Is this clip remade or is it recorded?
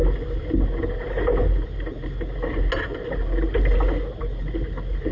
recorded